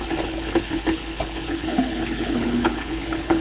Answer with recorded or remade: remade